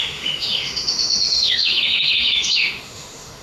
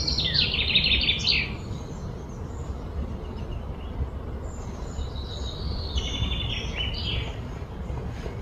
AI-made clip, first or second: first